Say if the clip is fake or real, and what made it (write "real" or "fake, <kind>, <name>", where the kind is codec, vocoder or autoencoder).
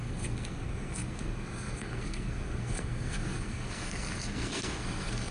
fake, codec, SNAC